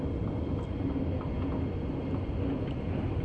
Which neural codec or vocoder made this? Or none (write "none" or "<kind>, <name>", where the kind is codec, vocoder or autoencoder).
none